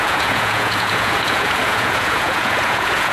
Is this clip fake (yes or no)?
yes